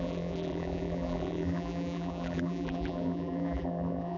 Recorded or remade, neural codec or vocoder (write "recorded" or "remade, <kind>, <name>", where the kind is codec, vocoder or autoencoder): remade, vocoder, BigVGAN v2